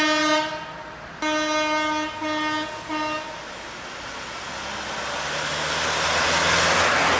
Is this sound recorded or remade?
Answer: recorded